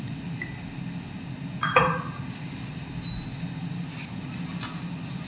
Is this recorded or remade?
recorded